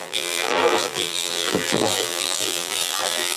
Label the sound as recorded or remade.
remade